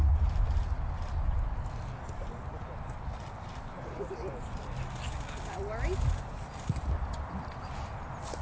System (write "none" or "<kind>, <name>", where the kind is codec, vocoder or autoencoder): none